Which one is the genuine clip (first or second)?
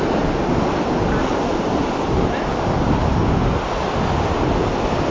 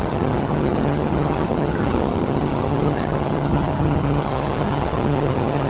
first